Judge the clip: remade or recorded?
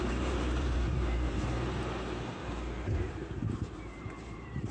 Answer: remade